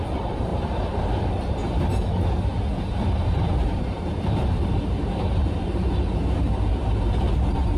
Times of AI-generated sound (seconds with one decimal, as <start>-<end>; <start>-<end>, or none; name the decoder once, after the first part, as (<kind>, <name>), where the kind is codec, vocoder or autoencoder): 0.0-0.5 (vocoder, BigVGAN v2); 1.1-1.6; 2.8-7.8